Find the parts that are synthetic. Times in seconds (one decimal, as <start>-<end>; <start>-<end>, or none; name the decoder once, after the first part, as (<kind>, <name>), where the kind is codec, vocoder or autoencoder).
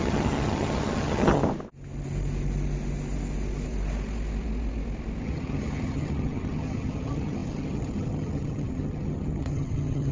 0.0-1.4 (vocoder, HiFi-GAN); 5.2-10.1